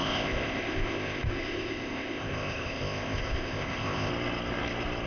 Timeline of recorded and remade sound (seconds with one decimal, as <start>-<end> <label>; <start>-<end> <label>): 0.0-4.1 remade; 4.1-5.1 recorded